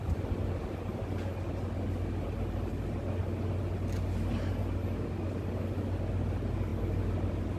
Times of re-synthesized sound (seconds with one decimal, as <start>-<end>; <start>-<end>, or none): none